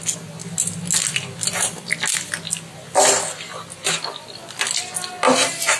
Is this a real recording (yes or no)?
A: yes